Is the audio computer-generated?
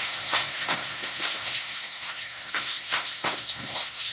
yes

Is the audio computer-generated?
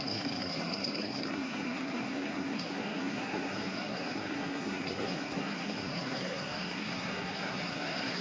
yes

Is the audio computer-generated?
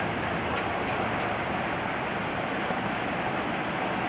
no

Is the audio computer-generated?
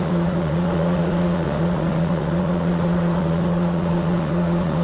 yes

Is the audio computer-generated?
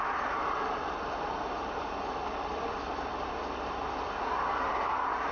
yes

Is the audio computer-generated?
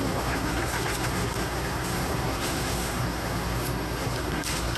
yes